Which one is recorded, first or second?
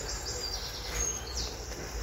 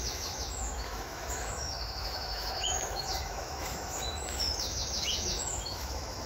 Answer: first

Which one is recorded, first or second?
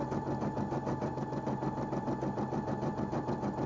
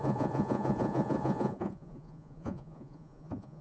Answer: first